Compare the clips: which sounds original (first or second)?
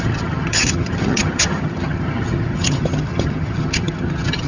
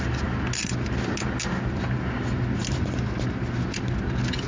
second